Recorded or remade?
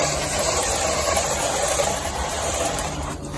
remade